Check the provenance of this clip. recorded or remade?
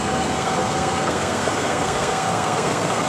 remade